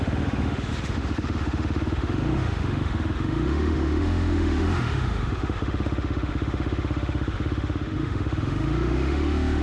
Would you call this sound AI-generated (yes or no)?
yes